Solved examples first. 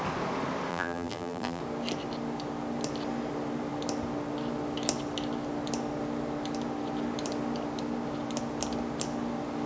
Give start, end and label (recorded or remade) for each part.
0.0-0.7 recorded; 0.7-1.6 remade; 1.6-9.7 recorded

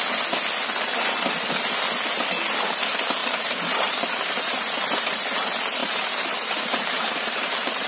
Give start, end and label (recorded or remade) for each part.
0.0-3.2 recorded; 3.2-5.1 remade; 5.1-5.8 recorded; 5.8-7.9 remade

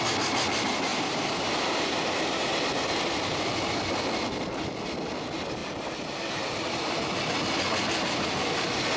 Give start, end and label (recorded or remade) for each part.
0.0-0.9 recorded; 0.9-3.7 remade; 3.7-9.0 recorded

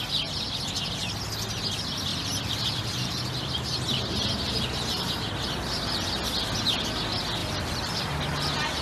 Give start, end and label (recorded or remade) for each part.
0.0-2.1 recorded; 2.1-5.3 remade; 5.3-7.4 recorded; 7.4-8.0 remade; 8.0-8.8 recorded

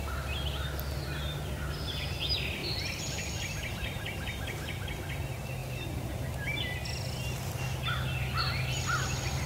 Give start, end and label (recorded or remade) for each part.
0.0-2.6 recorded; 2.6-3.2 remade; 3.2-3.7 recorded; 3.7-4.7 remade; 4.7-9.5 recorded

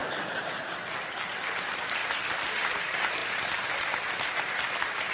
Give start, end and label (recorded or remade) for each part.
0.0-3.2 remade; 3.2-5.1 recorded